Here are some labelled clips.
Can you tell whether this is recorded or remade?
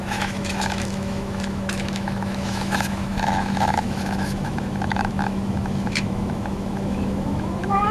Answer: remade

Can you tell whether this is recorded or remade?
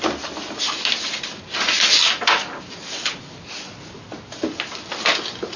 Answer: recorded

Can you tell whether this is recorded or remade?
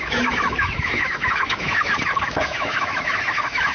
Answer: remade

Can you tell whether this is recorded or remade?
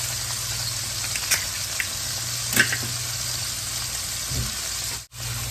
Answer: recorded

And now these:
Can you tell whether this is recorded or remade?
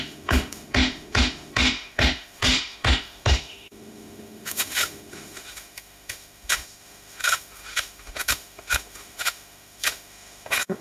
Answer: remade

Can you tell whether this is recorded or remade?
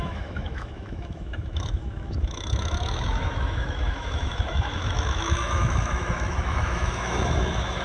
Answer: remade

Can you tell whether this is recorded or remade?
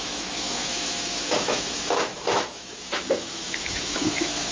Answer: remade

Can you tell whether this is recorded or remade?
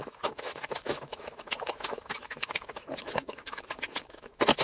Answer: remade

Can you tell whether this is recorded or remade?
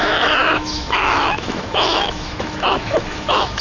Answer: remade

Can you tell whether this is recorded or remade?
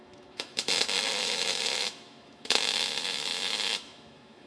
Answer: remade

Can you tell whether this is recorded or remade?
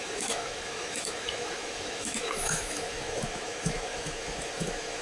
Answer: remade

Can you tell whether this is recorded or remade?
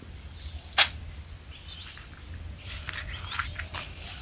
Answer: recorded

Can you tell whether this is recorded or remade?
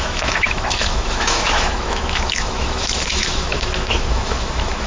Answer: remade